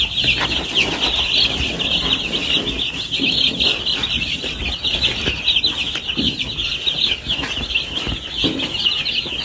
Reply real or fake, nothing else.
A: real